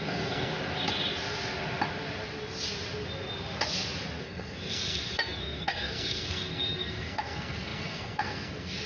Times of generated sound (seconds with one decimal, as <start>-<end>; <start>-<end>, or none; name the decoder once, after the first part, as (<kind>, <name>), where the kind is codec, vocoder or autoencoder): 0.0-0.5 (codec, SNAC); 4.2-8.9